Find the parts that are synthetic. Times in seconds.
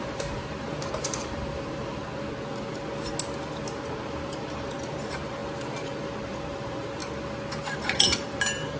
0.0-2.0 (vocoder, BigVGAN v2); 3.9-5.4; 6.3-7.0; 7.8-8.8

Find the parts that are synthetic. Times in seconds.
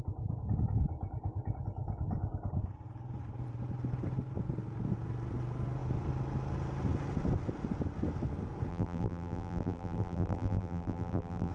8.7-11.5 (vocoder, BigVGAN v2)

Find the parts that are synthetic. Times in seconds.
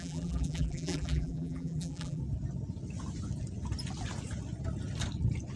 0.0-2.2 (vocoder, BigVGAN v2)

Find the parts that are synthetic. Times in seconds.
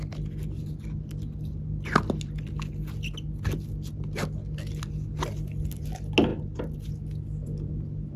6.3-6.9 (vocoder, BigVGAN v2)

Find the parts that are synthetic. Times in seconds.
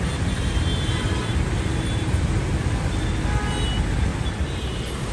0.7-2.2 (vocoder, BigVGAN v2); 4.1-5.1